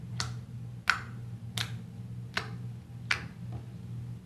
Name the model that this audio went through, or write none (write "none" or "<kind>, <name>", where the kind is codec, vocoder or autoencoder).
none